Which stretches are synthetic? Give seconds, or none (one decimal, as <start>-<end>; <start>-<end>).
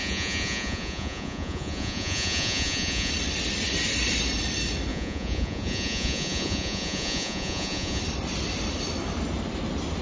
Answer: 0.0-3.1; 4.9-8.0